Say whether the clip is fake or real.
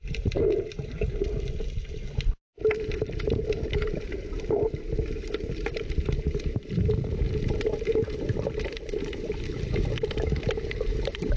fake